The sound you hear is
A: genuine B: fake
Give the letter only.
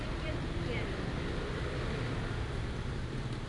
A